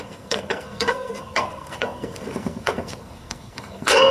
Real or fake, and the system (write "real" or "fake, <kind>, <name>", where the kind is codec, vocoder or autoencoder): fake, codec, SNAC